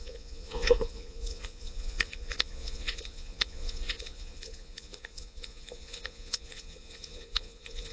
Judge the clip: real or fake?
fake